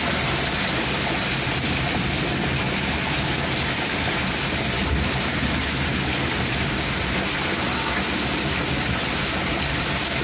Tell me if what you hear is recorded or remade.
recorded